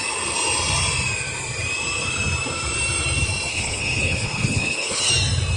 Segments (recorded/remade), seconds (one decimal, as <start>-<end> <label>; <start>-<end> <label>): 0.0-3.5 recorded; 3.5-5.1 remade; 5.1-5.6 recorded